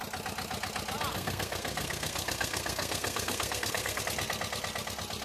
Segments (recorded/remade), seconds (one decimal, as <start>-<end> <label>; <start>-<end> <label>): 0.0-1.1 recorded; 1.1-4.0 remade; 4.0-5.2 recorded